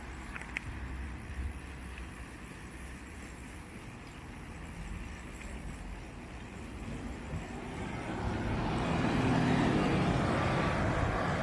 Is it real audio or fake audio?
real